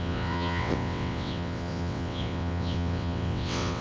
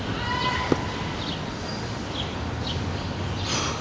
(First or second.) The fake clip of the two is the first